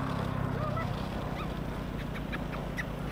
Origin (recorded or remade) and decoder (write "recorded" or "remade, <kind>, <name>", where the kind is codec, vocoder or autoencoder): recorded